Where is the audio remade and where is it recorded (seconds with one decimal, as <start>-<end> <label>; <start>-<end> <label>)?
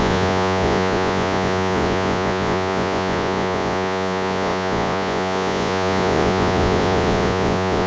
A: 0.0-7.9 remade